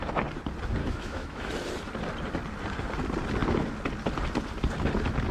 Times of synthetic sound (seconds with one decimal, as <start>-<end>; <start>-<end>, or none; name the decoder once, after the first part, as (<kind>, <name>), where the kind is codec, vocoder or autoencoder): 0.8-1.5 (autoencoder, DAC-VAE)